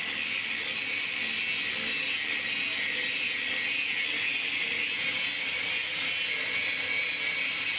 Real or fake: real